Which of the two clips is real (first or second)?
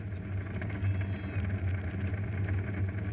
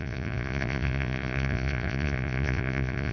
first